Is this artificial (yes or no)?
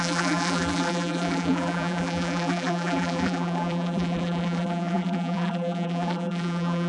yes